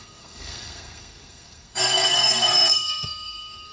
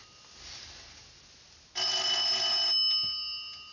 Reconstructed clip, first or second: first